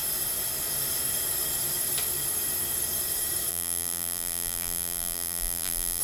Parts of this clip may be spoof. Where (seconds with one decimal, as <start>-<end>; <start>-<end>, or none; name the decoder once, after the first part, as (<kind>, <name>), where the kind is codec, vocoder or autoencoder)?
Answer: 3.5-6.0 (vocoder, BigVGAN v2)